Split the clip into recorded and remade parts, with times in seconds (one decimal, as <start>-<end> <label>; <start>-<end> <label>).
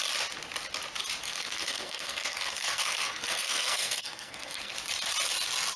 0.0-1.2 recorded; 1.2-4.7 remade; 4.7-5.8 recorded